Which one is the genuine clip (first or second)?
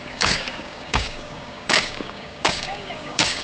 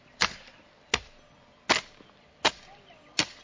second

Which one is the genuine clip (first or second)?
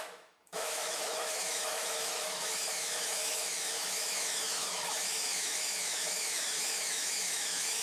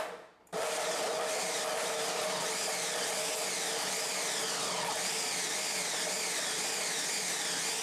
second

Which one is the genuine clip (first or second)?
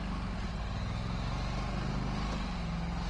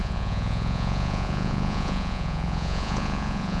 first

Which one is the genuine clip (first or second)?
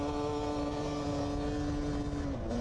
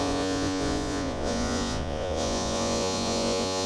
first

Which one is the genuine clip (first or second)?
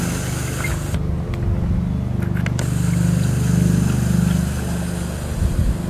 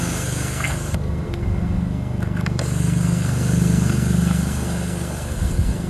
first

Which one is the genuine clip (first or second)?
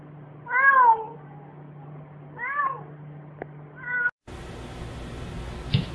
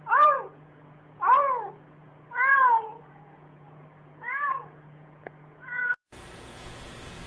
first